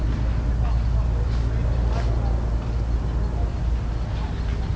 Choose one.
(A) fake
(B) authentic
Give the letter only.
B